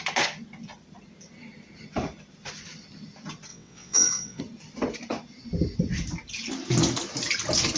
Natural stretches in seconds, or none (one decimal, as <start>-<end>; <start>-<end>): 0.0-3.5; 4.4-7.8